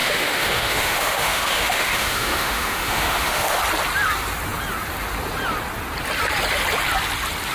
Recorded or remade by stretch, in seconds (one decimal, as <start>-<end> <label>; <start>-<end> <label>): 0.0-3.6 remade; 3.6-7.5 recorded